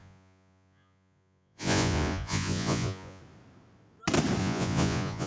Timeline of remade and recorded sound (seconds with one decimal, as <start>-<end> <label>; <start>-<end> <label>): 0.0-3.2 remade; 3.2-4.4 recorded; 4.4-5.3 remade